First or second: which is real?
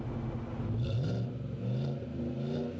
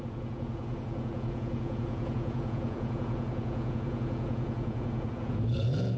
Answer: first